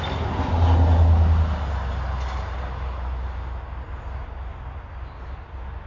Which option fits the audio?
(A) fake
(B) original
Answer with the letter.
B